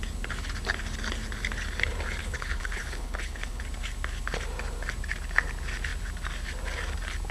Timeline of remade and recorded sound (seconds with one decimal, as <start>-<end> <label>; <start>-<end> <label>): 0.0-2.2 recorded; 2.2-3.6 remade; 3.6-7.3 recorded